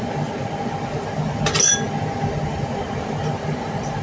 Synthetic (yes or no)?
no